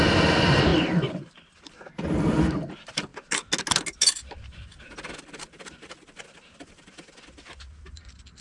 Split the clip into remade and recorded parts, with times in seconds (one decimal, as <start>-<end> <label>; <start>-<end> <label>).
0.0-8.4 recorded